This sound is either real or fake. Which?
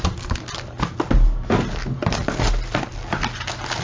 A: real